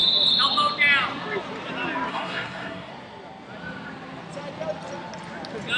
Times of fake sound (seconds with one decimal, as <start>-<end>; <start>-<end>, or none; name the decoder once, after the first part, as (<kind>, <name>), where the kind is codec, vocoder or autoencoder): 2.1-2.9 (codec, SNAC)